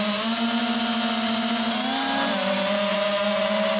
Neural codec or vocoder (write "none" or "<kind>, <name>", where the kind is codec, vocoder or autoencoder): none